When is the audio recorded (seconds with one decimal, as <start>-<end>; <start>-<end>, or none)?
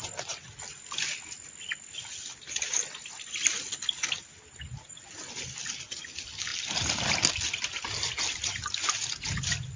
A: 0.0-9.8